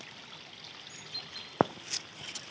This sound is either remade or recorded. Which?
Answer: recorded